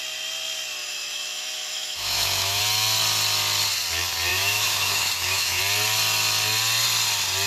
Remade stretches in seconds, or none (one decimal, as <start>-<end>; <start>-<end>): 0.8-2.6; 4.3-5.6